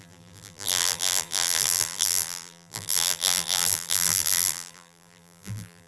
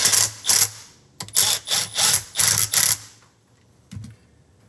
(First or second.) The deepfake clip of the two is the first